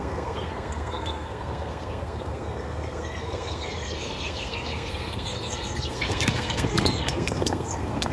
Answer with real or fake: fake